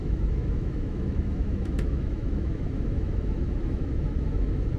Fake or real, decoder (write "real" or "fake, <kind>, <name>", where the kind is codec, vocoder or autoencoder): fake, autoencoder, DAC-VAE